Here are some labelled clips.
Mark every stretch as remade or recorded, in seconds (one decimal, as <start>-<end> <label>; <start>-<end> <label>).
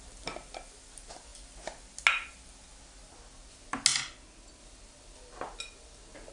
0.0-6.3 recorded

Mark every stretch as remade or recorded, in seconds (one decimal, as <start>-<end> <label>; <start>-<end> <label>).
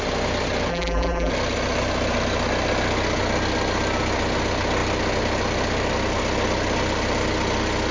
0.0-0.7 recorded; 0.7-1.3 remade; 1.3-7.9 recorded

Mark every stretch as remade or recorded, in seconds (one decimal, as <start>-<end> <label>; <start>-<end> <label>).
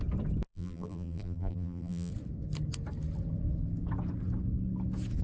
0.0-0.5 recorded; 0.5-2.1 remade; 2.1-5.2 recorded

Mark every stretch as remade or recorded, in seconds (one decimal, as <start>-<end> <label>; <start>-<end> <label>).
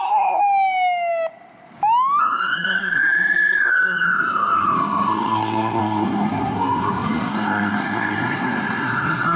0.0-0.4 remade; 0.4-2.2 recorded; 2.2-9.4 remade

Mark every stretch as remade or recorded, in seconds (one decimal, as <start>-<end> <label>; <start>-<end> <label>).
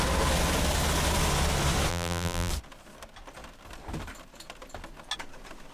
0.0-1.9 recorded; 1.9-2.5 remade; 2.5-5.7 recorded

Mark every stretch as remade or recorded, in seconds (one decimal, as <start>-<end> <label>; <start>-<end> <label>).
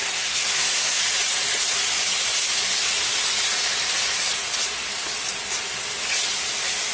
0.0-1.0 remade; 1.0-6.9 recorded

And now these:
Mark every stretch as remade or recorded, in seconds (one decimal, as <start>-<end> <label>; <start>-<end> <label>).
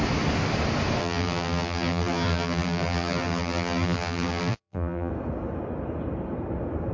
0.0-1.0 recorded; 1.0-5.1 remade; 5.1-6.9 recorded